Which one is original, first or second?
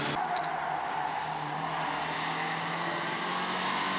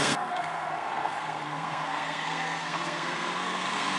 first